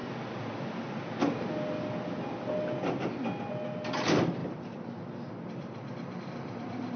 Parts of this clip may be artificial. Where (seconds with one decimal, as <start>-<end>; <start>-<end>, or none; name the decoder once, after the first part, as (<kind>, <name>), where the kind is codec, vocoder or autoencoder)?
0.0-0.9 (vocoder, BigVGAN v2); 4.4-7.0